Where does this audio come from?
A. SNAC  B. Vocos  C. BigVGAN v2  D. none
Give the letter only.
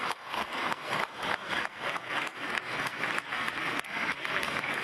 A